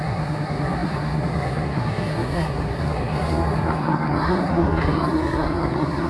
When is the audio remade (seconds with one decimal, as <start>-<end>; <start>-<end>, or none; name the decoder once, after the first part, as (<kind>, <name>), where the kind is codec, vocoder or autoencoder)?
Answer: 0.0-6.1 (codec, SNAC)